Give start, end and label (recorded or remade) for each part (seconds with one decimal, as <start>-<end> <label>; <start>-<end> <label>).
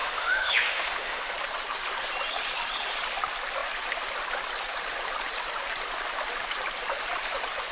0.0-1.3 remade; 1.3-7.7 recorded